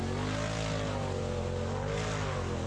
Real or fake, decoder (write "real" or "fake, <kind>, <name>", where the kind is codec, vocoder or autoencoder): real